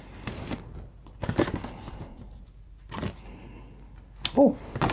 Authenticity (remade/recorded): recorded